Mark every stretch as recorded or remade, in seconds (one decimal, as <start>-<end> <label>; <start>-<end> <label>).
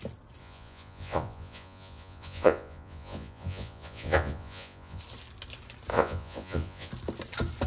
0.0-0.4 recorded; 0.4-5.0 remade; 5.0-5.9 recorded; 5.9-6.9 remade; 6.9-7.7 recorded